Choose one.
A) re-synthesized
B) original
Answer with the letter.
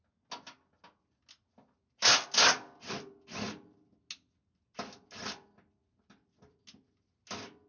B